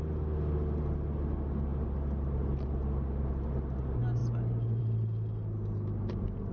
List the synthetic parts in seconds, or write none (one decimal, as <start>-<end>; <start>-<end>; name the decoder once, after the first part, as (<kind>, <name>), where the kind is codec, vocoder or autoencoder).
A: none

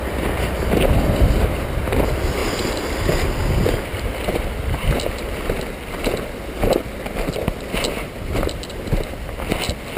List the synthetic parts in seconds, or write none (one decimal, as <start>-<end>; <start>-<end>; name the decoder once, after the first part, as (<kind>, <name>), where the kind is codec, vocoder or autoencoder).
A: none